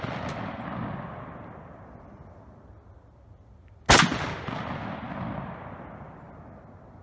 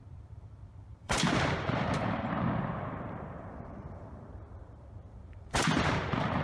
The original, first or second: first